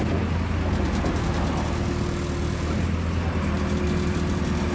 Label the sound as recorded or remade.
recorded